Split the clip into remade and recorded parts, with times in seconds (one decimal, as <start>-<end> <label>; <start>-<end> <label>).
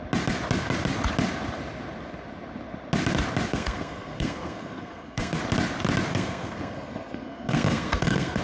0.0-3.5 recorded; 3.5-5.4 remade; 5.4-6.1 recorded; 6.1-8.4 remade